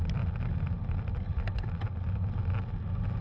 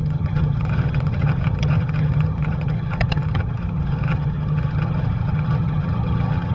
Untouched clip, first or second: first